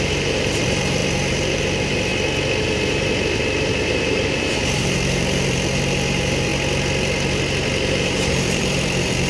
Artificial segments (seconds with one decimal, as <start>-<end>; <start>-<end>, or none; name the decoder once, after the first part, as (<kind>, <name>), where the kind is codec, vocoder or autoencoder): 0.0-2.1 (vocoder, BigVGAN v2); 2.6-6.5; 7.9-9.3